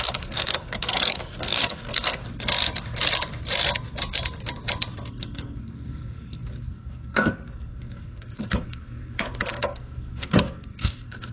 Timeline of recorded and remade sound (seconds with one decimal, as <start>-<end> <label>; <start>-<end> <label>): 0.0-2.2 remade; 2.2-5.1 recorded; 5.1-11.3 remade